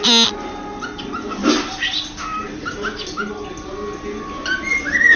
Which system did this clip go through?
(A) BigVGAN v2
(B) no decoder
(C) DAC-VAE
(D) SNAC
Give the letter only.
B